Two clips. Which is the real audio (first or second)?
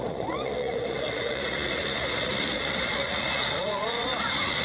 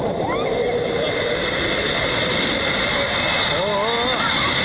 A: second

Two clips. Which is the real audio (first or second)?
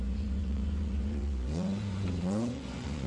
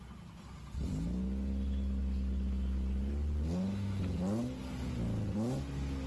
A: second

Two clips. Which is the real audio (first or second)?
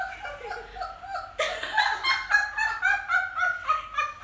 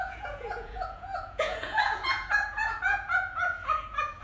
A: first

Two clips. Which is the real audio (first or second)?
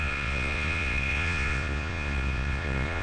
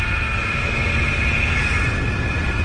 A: second